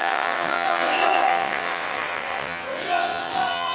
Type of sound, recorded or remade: remade